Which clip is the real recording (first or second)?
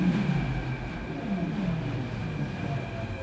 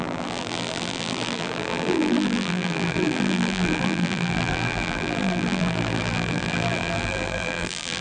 first